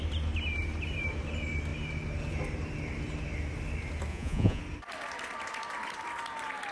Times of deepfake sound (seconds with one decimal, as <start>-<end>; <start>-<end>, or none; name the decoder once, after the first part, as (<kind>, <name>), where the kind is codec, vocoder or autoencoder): 4.1-4.6 (vocoder, Vocos)